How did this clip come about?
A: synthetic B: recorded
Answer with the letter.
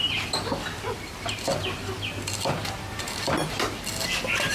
B